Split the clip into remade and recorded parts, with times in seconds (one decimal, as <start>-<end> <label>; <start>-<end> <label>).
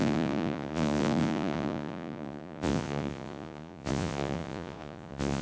0.0-5.4 remade